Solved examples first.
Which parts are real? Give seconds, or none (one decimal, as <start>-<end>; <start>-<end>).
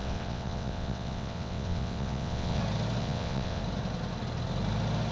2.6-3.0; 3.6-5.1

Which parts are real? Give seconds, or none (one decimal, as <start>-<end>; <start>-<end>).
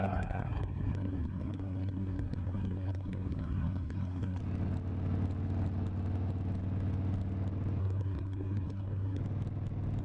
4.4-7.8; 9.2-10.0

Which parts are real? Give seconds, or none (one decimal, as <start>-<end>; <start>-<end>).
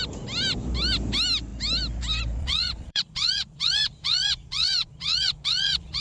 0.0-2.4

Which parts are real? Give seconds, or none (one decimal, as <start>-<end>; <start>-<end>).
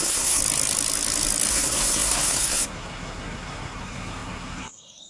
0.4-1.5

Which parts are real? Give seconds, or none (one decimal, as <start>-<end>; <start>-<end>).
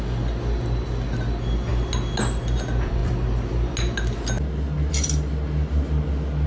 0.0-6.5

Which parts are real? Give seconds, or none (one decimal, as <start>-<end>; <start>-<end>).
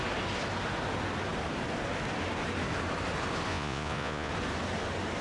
0.0-3.5; 4.3-5.2